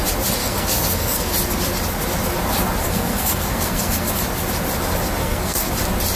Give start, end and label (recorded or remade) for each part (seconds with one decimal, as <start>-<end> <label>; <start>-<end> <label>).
0.0-0.4 recorded; 0.4-1.3 remade; 1.3-2.8 recorded; 2.8-4.1 remade; 4.1-5.2 recorded; 5.2-5.7 remade; 5.7-6.2 recorded

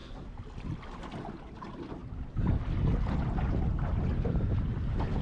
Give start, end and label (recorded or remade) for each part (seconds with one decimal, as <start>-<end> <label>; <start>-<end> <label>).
0.0-5.2 recorded

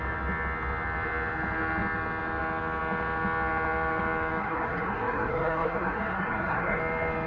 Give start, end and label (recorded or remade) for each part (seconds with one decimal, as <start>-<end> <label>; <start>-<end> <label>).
0.0-4.4 recorded; 4.4-6.8 remade; 6.8-7.3 recorded